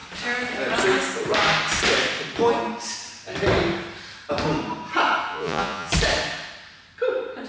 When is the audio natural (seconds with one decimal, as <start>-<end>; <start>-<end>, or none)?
0.0-5.3; 5.9-7.5